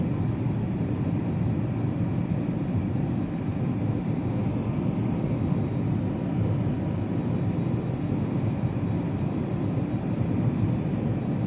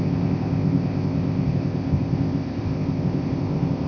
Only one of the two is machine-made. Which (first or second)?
second